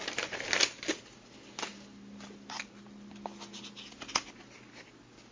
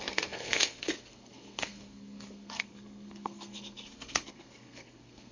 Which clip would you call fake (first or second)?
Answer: second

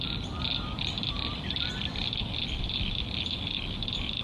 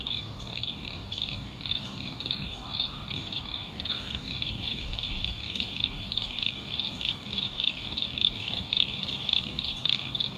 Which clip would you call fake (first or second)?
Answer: second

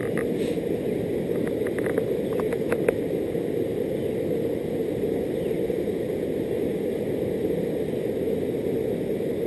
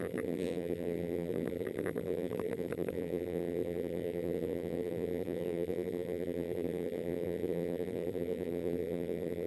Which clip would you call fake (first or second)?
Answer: second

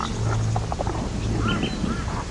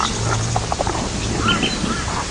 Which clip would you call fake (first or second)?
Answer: second